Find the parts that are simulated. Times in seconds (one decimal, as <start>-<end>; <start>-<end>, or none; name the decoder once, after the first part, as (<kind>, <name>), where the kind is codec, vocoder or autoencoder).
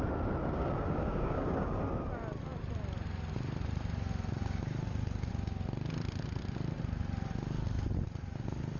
0.4-1.8 (codec, DAC)